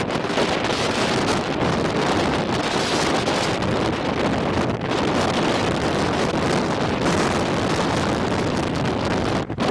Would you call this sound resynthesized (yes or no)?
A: no